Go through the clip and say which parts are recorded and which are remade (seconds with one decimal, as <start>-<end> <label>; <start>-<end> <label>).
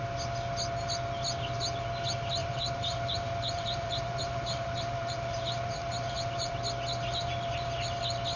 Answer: 0.0-2.4 recorded; 2.4-6.5 remade; 6.5-7.1 recorded; 7.1-8.0 remade; 8.0-8.4 recorded